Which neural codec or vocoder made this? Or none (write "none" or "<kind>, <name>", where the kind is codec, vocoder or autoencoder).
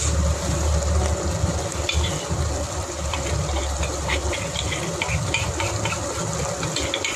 none